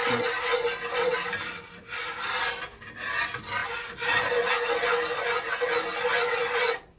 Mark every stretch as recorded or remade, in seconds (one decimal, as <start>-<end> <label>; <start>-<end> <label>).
0.0-7.0 recorded